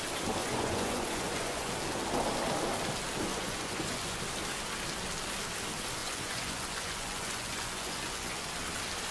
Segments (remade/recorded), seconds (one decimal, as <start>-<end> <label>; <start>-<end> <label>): 0.0-0.4 recorded; 0.4-1.7 remade; 1.7-3.3 recorded; 3.3-4.2 remade; 4.2-6.0 recorded; 6.0-8.5 remade; 8.5-9.1 recorded